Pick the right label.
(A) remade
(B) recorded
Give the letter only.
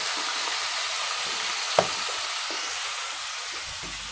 B